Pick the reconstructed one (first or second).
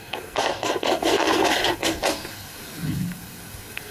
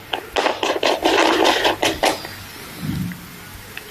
first